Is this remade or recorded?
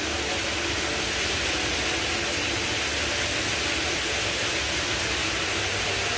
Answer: recorded